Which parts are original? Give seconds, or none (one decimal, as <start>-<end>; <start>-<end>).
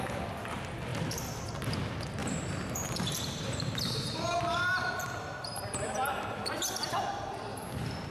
0.0-2.2; 6.5-7.5